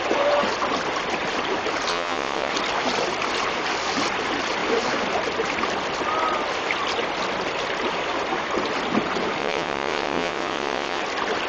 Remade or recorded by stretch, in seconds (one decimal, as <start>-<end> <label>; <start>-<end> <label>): 0.0-1.9 recorded; 1.9-2.5 remade; 2.5-9.4 recorded; 9.4-11.0 remade; 11.0-11.5 recorded